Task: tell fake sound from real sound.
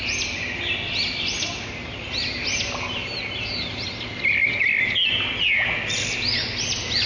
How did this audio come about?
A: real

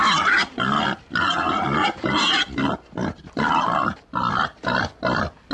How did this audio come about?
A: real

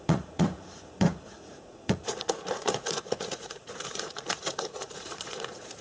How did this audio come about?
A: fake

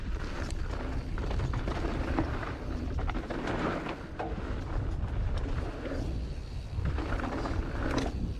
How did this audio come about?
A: real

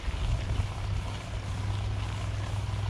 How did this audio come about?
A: real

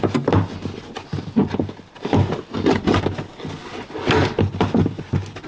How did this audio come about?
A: real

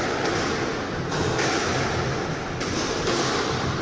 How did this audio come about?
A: real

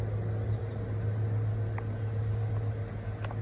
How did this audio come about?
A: real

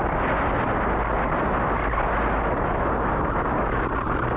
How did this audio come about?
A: real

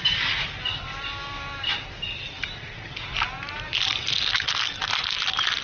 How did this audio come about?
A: real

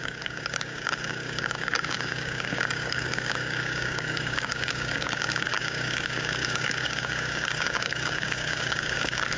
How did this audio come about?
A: fake